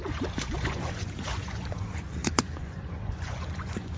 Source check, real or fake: fake